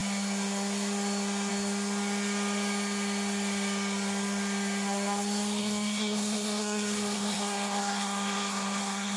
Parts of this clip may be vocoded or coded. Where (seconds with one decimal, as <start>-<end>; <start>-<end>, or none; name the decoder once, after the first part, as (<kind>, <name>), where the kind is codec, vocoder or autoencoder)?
5.6-9.2 (codec, SNAC)